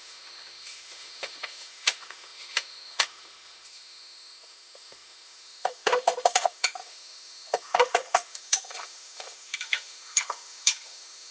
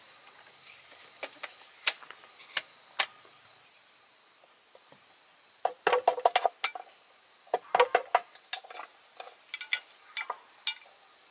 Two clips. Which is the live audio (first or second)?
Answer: second